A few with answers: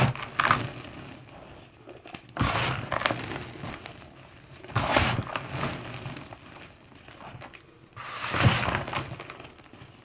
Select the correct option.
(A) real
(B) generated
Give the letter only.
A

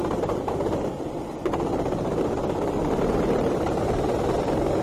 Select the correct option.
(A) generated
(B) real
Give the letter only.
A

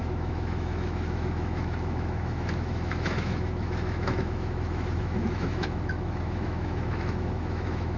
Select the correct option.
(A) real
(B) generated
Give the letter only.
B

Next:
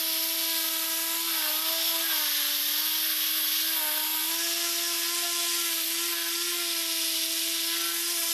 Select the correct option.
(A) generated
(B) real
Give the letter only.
B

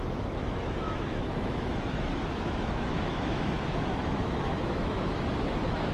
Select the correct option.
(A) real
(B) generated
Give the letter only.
B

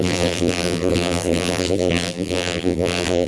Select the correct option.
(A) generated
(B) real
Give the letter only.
A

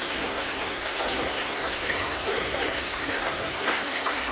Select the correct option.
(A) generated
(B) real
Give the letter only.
A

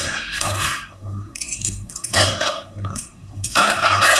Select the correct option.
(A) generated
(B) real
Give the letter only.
A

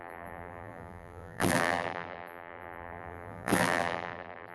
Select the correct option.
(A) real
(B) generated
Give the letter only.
B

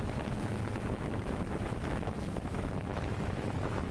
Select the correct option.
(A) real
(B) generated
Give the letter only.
B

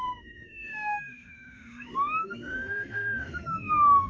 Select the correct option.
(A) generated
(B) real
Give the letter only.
A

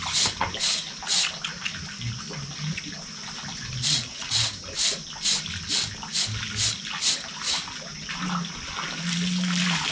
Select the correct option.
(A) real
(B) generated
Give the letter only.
A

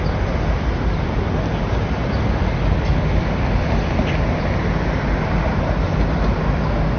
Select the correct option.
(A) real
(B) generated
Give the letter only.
A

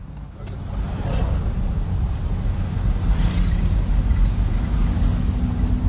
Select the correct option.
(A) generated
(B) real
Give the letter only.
B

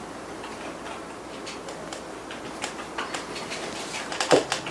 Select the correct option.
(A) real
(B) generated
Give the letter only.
A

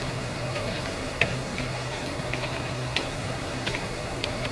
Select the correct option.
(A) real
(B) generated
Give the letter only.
B